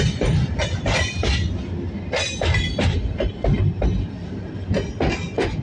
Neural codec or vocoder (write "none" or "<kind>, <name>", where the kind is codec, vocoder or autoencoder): none